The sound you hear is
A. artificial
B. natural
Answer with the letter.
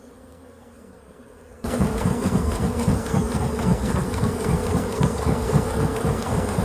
A